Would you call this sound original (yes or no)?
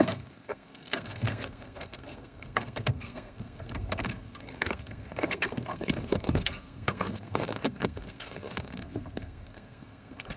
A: no